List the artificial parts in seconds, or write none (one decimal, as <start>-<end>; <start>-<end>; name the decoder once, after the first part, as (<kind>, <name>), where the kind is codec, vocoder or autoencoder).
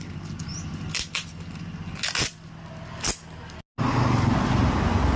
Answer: none